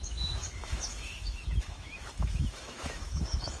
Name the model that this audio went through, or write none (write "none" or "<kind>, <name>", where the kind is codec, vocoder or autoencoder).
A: autoencoder, DAC-VAE